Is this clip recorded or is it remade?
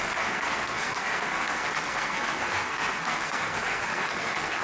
remade